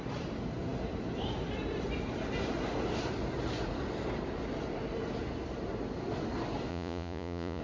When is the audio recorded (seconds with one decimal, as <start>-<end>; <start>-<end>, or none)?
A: 0.0-6.7